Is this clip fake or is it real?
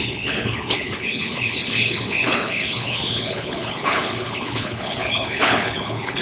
fake